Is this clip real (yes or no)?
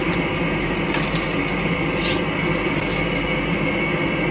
yes